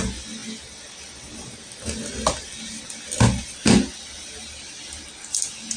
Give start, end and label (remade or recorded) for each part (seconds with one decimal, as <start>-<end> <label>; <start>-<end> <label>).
0.0-5.8 recorded